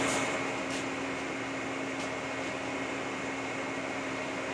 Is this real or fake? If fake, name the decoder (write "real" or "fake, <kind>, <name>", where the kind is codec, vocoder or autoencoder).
fake, vocoder, BigVGAN v2